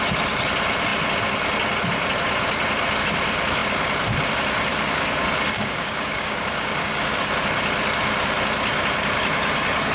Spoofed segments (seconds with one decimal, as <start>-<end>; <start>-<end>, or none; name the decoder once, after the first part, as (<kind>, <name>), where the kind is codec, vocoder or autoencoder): 4.7-7.3 (codec, DAC)